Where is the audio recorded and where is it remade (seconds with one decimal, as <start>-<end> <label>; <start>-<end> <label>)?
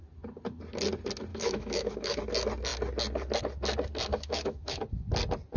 0.0-1.3 recorded; 1.3-2.2 remade; 2.2-4.1 recorded; 4.1-4.8 remade; 4.8-5.6 recorded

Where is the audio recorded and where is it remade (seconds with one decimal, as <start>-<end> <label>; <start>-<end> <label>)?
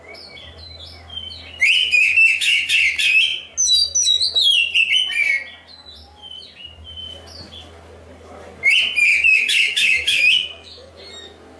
0.0-1.8 recorded; 1.8-2.7 remade; 2.7-9.1 recorded; 9.1-10.9 remade; 10.9-11.6 recorded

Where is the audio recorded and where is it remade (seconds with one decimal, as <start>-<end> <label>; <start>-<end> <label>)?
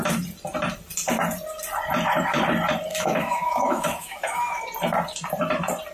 0.0-2.9 recorded; 2.9-4.6 remade; 4.6-5.9 recorded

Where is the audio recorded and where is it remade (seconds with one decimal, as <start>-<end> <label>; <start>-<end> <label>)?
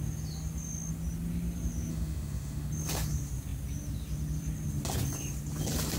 0.0-1.9 recorded; 1.9-2.7 remade; 2.7-6.0 recorded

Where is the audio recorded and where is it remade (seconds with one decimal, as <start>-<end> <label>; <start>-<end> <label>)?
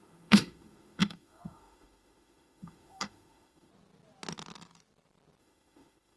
0.0-3.7 remade; 3.7-5.4 recorded; 5.4-6.2 remade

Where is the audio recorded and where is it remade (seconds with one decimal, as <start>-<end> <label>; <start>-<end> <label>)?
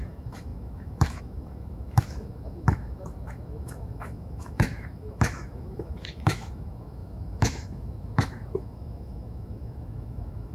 0.0-10.5 remade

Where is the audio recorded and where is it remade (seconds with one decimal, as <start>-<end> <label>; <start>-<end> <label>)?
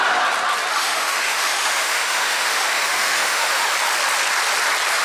0.0-0.7 recorded; 0.7-3.7 remade; 3.7-5.0 recorded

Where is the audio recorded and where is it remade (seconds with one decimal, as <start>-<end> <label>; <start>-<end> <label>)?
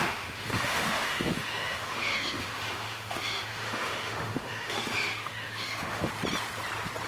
0.0-6.1 remade; 6.1-7.1 recorded